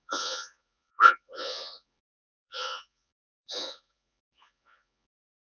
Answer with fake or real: fake